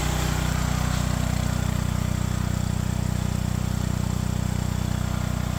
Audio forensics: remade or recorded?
remade